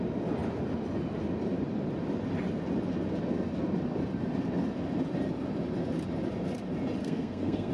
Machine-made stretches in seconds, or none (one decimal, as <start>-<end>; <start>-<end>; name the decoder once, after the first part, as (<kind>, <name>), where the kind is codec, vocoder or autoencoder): 7.0-7.7 (codec, SNAC)